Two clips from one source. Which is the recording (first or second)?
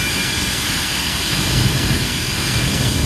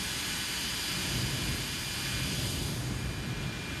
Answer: second